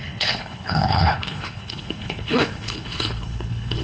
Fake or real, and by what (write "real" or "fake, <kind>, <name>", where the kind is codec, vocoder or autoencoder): fake, codec, HILCodec